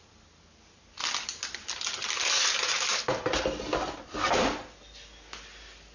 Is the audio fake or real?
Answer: real